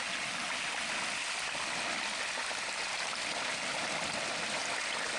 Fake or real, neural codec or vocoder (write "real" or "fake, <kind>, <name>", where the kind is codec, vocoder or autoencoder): real